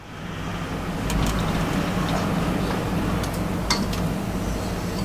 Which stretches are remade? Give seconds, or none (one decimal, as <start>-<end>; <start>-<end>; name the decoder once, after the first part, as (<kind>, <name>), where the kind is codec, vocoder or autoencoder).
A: none